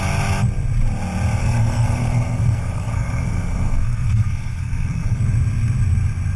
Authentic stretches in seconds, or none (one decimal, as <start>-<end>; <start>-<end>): 0.0-1.4; 5.2-6.4